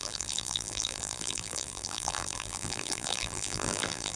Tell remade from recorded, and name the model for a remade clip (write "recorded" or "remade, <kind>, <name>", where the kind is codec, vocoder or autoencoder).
remade, vocoder, BigVGAN v2